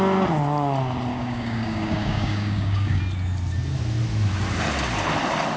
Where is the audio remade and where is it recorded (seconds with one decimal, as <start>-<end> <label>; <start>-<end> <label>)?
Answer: 0.0-1.1 recorded; 1.1-3.0 remade; 3.0-5.6 recorded